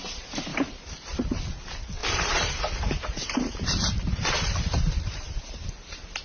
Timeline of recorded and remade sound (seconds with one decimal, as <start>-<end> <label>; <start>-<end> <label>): 0.0-2.0 recorded; 2.0-5.7 remade; 5.7-6.2 recorded

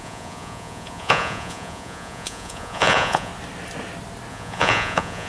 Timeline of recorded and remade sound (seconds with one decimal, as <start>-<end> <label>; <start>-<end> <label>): 0.0-3.3 remade; 3.3-4.3 recorded; 4.3-5.3 remade

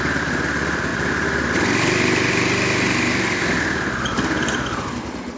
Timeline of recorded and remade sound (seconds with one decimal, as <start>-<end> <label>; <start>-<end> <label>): 0.0-5.4 recorded

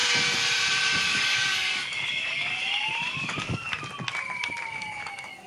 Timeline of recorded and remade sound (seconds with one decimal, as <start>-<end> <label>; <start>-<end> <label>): 0.0-1.1 recorded; 1.1-3.7 remade; 3.7-4.7 recorded; 4.7-5.5 remade

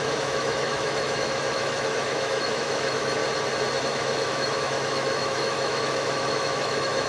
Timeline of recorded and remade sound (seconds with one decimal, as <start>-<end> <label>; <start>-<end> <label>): 0.0-3.2 remade; 3.2-3.8 recorded; 3.8-7.1 remade

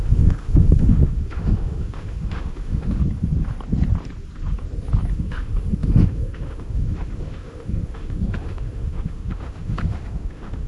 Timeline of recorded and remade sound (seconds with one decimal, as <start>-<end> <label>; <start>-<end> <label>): 0.0-3.0 remade; 3.0-5.1 recorded; 5.1-10.7 remade

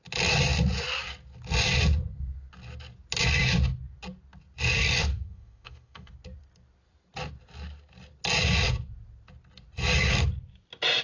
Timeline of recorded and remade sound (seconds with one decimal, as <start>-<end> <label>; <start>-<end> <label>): 0.0-5.0 recorded; 5.0-6.1 remade; 6.1-11.0 recorded

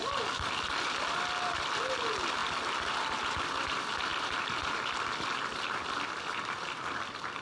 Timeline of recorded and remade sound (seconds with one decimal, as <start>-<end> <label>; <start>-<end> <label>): 0.0-4.1 recorded; 4.1-5.2 remade; 5.2-7.4 recorded